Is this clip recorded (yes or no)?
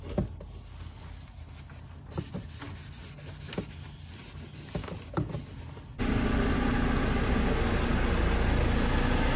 yes